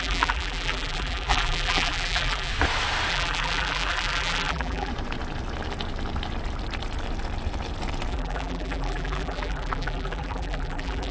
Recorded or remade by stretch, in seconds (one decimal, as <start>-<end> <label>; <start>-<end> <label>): 0.0-2.5 remade; 2.5-3.1 recorded; 3.1-4.9 remade; 4.9-8.1 recorded; 8.1-11.1 remade